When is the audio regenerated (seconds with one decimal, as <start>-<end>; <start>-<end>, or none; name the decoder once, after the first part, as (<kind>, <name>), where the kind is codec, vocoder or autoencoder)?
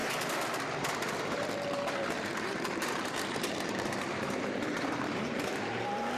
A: 0.0-6.2 (vocoder, BigVGAN v2)